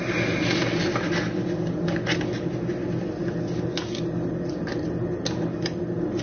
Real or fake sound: real